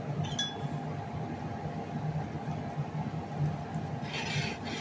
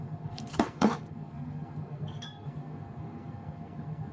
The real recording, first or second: first